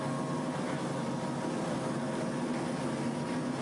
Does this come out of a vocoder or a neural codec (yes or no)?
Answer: no